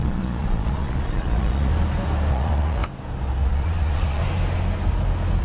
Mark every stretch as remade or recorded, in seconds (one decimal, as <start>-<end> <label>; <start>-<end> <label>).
0.0-1.7 remade; 1.7-2.3 recorded; 2.3-2.8 remade; 2.8-3.5 recorded; 3.5-4.2 remade; 4.2-5.4 recorded